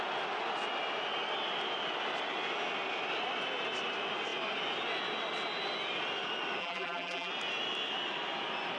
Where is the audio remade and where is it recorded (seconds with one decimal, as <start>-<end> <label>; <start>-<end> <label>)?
0.0-6.6 recorded; 6.6-7.3 remade; 7.3-8.8 recorded